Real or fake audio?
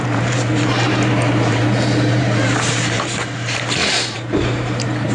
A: fake